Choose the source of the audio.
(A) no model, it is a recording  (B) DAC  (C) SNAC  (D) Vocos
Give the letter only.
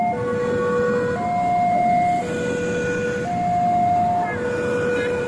A